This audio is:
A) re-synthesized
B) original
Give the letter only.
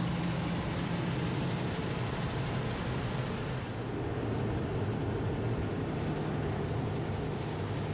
B